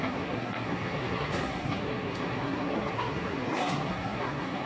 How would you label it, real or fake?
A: fake